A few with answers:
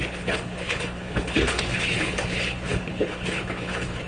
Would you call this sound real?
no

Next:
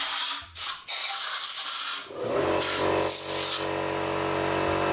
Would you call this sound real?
yes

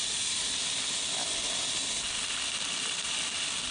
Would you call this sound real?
yes